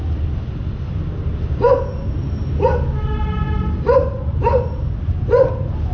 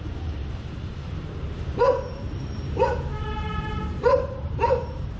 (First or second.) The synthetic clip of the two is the second